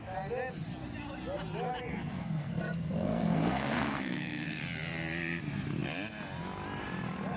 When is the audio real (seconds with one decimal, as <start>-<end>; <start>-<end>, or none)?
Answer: 0.0-1.9; 4.6-7.4